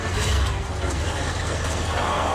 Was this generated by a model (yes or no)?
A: yes